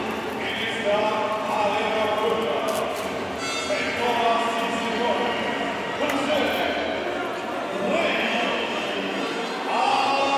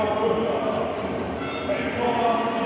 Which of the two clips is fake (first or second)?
second